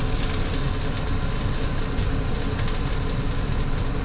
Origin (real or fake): real